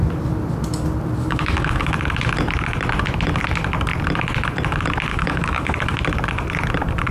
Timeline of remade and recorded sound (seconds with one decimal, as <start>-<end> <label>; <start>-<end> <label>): 0.0-1.2 recorded; 1.2-1.9 remade; 1.9-5.1 recorded; 5.1-6.0 remade; 6.0-7.1 recorded